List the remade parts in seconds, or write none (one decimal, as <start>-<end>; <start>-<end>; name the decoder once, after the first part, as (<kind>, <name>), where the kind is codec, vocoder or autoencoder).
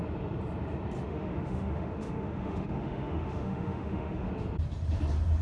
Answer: 1.1-4.3 (autoencoder, DAC-VAE)